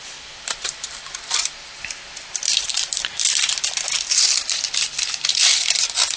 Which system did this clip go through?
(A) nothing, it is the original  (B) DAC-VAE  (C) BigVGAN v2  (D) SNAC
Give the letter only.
C